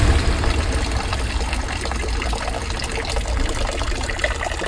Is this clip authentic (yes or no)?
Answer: no